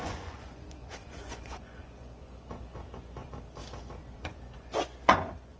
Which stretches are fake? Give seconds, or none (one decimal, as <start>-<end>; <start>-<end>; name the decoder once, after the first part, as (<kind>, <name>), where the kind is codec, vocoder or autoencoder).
0.0-3.4 (vocoder, Vocos); 4.0-5.6